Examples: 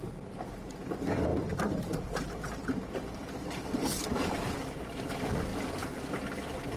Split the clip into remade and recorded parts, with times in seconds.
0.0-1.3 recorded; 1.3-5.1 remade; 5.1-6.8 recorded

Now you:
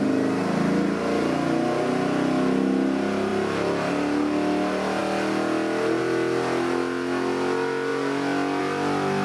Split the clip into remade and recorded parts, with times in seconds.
0.0-9.2 recorded

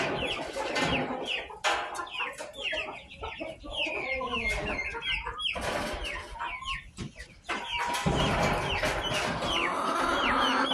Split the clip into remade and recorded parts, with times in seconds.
0.0-10.7 recorded

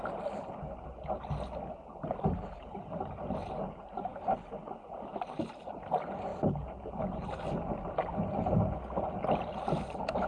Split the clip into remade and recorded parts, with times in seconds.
0.0-10.3 recorded

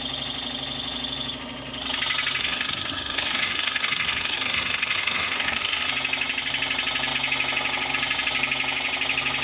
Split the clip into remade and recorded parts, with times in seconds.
0.0-2.4 recorded; 2.4-5.9 remade; 5.9-9.4 recorded

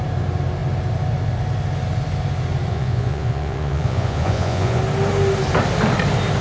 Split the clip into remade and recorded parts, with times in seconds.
0.0-2.7 recorded; 2.7-4.8 remade; 4.8-6.4 recorded